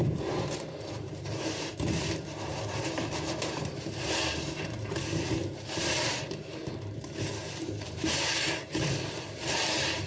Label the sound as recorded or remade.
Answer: remade